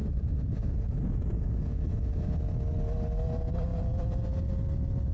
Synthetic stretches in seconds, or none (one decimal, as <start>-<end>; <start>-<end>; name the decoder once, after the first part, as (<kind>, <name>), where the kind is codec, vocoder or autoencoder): 0.0-2.4 (vocoder, Vocos); 3.7-4.5